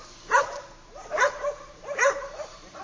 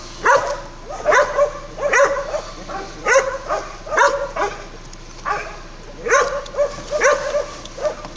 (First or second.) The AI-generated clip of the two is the first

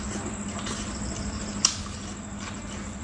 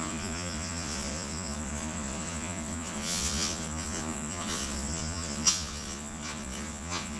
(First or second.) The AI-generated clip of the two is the second